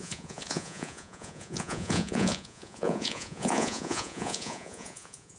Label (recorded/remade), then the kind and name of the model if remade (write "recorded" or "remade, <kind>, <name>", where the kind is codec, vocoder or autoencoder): remade, vocoder, Vocos